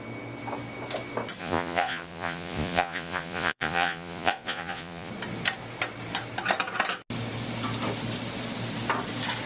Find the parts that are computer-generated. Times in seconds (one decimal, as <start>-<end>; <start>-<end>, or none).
1.4-5.1